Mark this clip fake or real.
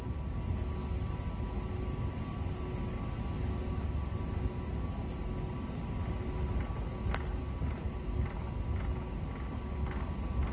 real